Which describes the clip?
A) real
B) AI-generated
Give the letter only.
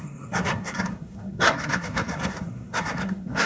B